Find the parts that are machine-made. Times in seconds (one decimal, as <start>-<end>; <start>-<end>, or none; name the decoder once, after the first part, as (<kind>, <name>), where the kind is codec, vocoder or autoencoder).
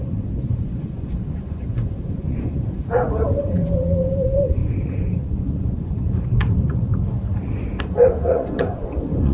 0.0-3.6 (vocoder, Vocos); 4.1-6.9; 7.8-9.3